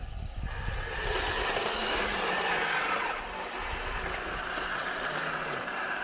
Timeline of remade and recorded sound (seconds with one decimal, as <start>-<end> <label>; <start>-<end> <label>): 0.0-6.0 recorded

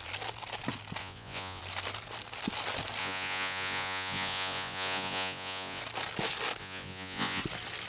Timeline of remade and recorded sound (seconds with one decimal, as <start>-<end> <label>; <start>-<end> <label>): 0.0-1.0 recorded; 1.0-1.6 remade; 1.6-3.0 recorded; 3.0-5.8 remade; 5.8-6.6 recorded; 6.6-7.4 remade; 7.4-7.9 recorded

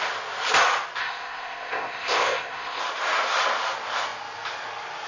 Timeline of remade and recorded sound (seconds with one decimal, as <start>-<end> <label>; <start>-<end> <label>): 0.0-1.0 recorded; 1.0-2.8 remade; 2.8-5.1 recorded

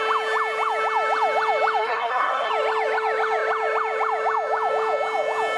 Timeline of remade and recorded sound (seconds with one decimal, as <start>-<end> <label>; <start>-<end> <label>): 0.0-1.8 recorded; 1.8-2.5 remade; 2.5-5.6 recorded

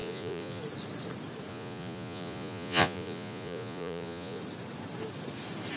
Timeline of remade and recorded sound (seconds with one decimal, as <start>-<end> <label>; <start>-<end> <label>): 0.0-0.6 remade; 0.6-1.5 recorded; 1.5-4.4 remade; 4.4-5.8 recorded